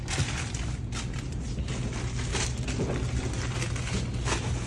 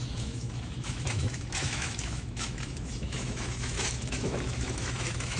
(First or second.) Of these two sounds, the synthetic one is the second